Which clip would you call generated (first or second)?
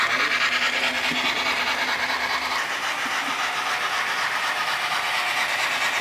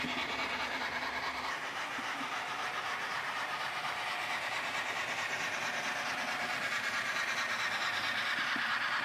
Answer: second